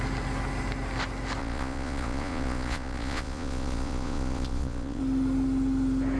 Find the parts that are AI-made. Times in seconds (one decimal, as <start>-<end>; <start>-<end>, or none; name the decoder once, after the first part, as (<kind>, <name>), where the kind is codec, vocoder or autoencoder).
1.4-5.0 (vocoder, Vocos)